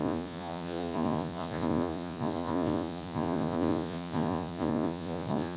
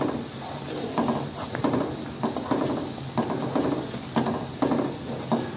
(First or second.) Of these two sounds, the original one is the second